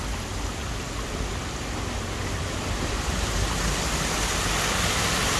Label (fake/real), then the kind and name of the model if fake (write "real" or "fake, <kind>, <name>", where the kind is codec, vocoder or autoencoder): real